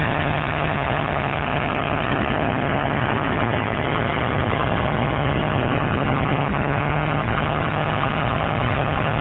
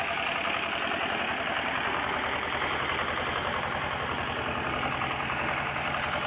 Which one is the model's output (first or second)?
first